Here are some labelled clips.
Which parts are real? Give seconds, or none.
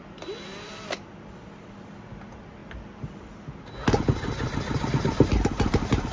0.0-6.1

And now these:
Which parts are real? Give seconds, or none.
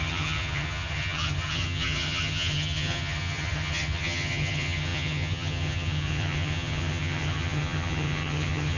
none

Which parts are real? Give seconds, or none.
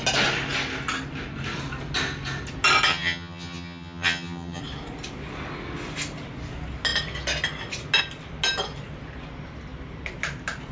0.0-2.9; 4.6-10.7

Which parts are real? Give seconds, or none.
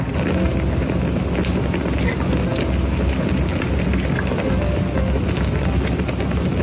0.0-6.6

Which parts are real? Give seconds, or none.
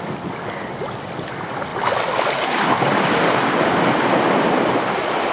0.0-5.3